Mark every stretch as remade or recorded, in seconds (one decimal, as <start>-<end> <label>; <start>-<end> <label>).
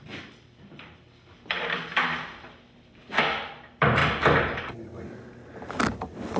0.0-6.4 recorded